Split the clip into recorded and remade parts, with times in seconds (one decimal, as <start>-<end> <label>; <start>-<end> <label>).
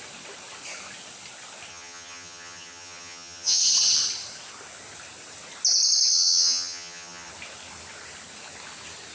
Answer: 0.0-1.7 recorded; 1.7-3.6 remade; 3.6-6.1 recorded; 6.1-7.3 remade; 7.3-9.1 recorded